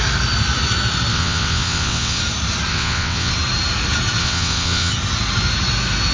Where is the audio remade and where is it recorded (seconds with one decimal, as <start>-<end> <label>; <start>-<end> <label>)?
0.0-1.1 recorded; 1.1-2.2 remade; 2.2-2.7 recorded; 2.7-3.3 remade; 3.3-4.2 recorded; 4.2-4.9 remade; 4.9-6.1 recorded

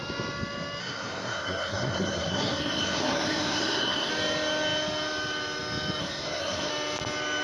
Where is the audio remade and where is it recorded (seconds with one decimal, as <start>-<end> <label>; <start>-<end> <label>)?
0.0-0.8 recorded; 0.8-4.1 remade; 4.1-6.0 recorded; 6.0-6.7 remade; 6.7-7.4 recorded

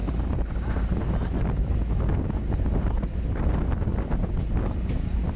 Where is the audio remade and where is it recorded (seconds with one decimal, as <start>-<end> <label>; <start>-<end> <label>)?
0.0-5.4 recorded

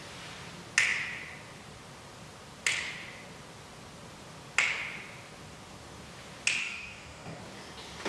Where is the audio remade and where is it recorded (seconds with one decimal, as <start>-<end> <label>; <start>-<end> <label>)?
0.0-6.6 recorded; 6.6-7.4 remade; 7.4-8.1 recorded